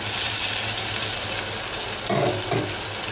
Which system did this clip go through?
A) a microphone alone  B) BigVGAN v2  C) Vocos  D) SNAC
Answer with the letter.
A